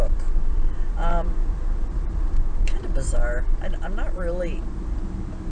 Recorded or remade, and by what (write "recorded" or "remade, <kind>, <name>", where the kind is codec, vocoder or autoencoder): remade, vocoder, BigVGAN v2